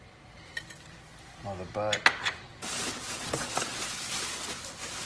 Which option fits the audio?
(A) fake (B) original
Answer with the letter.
B